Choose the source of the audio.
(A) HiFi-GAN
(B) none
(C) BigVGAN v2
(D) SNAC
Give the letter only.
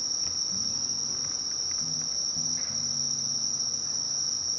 B